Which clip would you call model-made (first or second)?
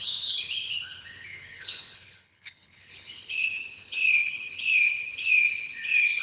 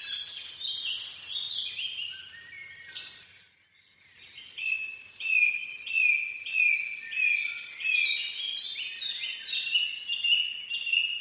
first